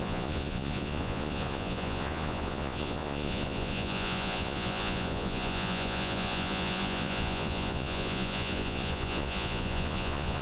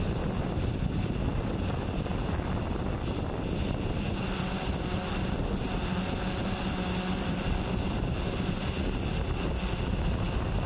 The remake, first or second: first